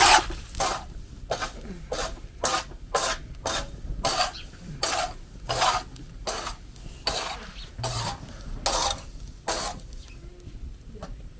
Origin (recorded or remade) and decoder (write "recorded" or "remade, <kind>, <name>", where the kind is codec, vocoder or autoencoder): recorded